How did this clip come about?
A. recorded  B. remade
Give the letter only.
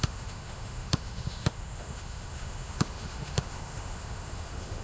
B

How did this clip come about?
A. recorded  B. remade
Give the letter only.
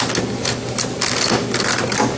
A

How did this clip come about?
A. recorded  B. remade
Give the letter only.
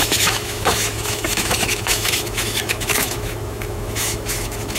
B